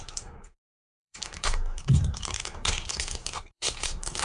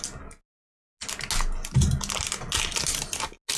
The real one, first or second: second